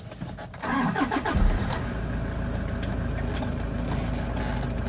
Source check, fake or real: real